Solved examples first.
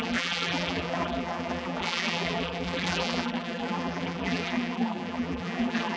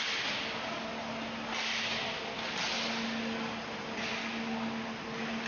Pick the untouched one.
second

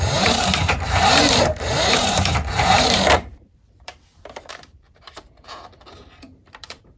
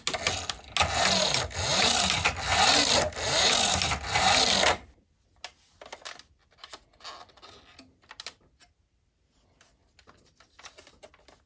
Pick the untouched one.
second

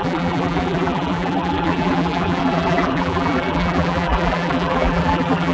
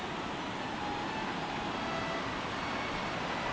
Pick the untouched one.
second